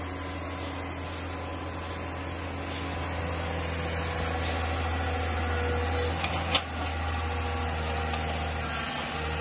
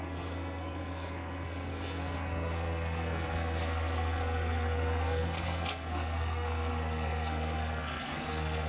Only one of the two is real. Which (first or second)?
first